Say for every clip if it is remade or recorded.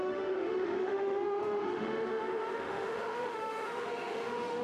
remade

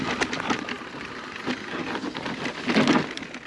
recorded